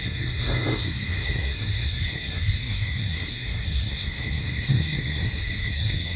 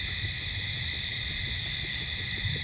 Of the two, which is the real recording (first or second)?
second